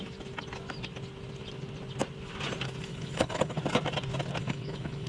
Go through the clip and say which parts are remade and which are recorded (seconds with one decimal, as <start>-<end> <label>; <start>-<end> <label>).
0.0-2.9 recorded; 2.9-3.6 remade; 3.6-4.4 recorded; 4.4-5.1 remade